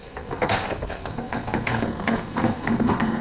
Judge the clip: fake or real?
fake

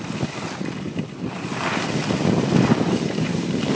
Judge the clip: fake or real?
real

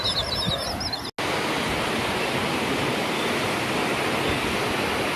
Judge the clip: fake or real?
real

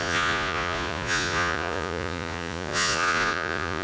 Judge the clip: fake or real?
fake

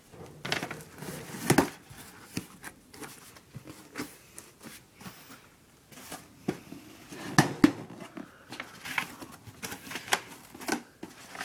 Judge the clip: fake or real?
real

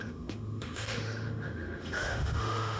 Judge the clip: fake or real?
fake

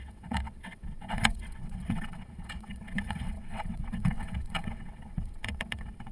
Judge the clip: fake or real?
fake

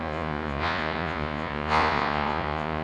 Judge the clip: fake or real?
fake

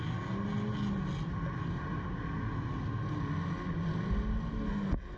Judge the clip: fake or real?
real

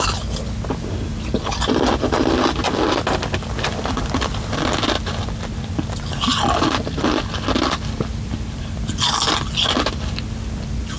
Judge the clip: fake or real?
real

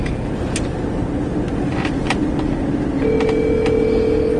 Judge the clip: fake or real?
real